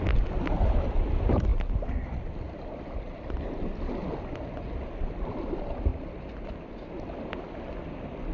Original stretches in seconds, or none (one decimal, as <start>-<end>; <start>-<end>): 0.0-8.3